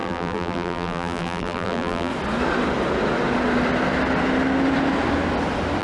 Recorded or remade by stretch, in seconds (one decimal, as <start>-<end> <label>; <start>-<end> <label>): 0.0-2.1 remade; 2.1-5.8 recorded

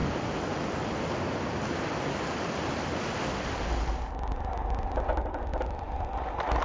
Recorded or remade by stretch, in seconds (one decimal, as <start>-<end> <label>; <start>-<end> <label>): 0.0-5.5 recorded; 5.5-6.6 remade

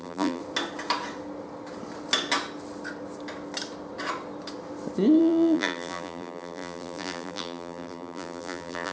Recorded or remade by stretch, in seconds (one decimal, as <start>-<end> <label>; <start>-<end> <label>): 0.0-0.4 remade; 0.4-5.2 recorded; 5.2-8.9 remade